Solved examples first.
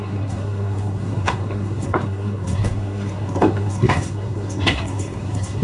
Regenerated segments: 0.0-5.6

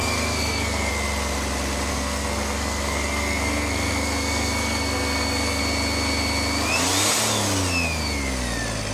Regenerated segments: 0.0-0.9; 1.9-5.6